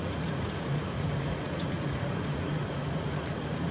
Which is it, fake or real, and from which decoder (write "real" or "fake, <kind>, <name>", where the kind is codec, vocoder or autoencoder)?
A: fake, vocoder, Vocos